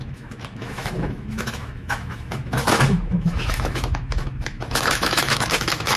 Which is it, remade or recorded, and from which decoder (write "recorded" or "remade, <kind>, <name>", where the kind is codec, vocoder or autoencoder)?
remade, autoencoder, DAC-VAE